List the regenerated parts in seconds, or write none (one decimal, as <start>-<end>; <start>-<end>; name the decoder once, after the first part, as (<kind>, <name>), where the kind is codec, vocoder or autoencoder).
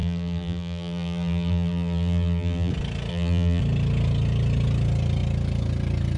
0.0-2.7 (vocoder, BigVGAN v2); 3.1-3.6